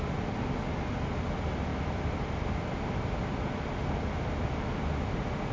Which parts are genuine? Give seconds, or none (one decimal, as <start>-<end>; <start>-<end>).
0.0-5.5